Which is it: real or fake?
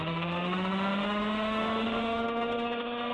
fake